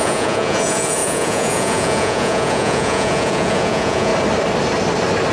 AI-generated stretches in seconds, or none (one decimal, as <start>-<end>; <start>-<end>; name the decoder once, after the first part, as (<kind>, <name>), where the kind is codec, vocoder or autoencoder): 0.0-4.1 (vocoder, Vocos)